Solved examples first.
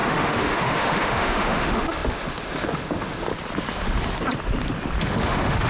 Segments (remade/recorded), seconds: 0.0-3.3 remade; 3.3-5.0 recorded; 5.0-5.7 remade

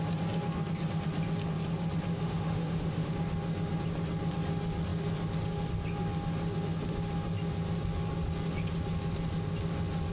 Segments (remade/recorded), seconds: 0.0-2.1 recorded; 2.1-3.1 remade; 3.1-10.1 recorded